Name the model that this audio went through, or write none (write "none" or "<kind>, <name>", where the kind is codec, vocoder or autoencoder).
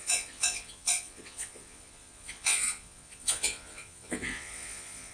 vocoder, Vocos